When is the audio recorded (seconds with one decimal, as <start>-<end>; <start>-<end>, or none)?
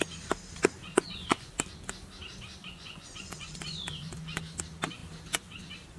0.0-0.8; 1.5-2.6; 4.4-6.0